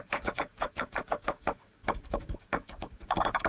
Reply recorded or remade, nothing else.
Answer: remade